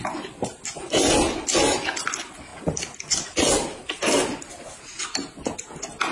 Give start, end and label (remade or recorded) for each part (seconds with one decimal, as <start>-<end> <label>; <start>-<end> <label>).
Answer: 0.0-6.1 recorded